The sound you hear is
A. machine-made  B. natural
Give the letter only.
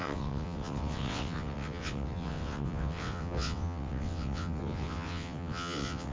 A